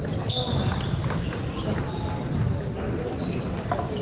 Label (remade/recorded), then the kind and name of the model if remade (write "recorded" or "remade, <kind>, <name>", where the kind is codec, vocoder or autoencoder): recorded